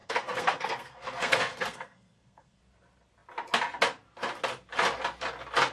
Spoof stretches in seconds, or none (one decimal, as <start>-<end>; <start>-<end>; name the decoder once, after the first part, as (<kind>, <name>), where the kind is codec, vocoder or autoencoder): 0.0-2.6 (codec, SNAC)